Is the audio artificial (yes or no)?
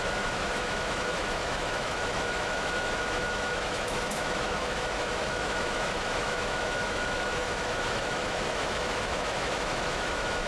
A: yes